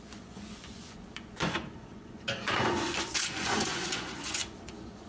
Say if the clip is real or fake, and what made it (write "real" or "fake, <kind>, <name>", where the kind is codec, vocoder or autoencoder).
fake, vocoder, Vocos